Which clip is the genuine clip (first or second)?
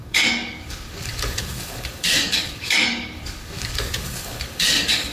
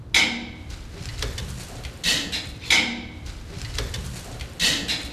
second